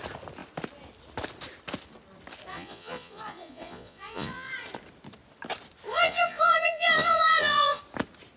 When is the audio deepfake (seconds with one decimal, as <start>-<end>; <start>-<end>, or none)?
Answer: 2.5-4.5; 5.9-7.8